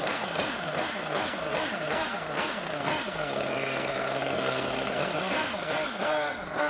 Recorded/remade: remade